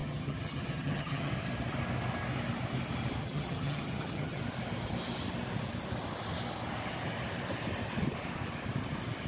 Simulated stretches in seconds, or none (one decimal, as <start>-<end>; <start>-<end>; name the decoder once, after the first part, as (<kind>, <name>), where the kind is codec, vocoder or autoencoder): 0.0-1.3 (vocoder, HiFi-GAN); 3.2-4.4